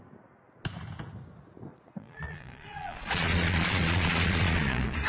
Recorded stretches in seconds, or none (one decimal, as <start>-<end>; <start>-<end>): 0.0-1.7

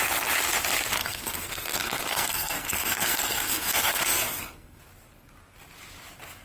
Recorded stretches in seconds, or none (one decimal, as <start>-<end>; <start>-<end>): 0.0-1.0; 4.8-6.4

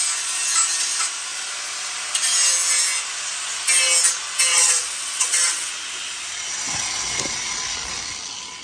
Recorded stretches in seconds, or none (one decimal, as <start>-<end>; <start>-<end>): 0.0-4.5; 5.7-8.6

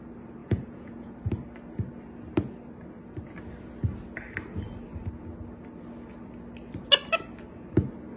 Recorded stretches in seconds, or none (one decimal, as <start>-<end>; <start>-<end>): 0.0-0.4; 1.1-8.2